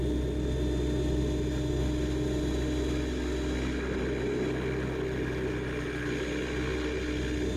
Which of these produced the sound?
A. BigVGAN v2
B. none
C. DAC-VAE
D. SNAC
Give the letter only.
B